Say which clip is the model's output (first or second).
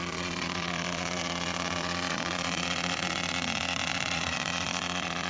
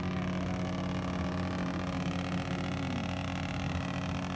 first